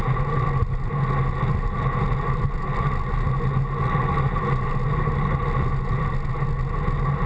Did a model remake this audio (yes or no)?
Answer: no